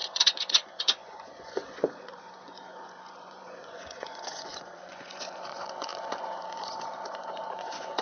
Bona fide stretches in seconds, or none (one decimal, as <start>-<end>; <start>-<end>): none